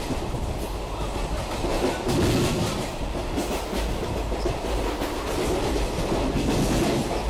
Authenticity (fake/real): real